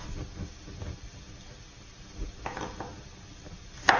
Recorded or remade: recorded